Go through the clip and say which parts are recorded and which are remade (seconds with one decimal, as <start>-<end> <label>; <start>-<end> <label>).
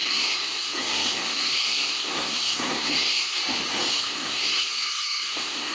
0.0-3.4 remade; 3.4-3.9 recorded; 3.9-5.7 remade